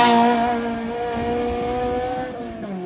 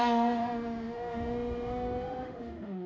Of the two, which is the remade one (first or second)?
second